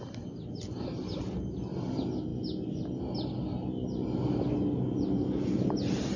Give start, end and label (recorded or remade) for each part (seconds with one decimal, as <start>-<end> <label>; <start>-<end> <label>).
0.0-6.2 recorded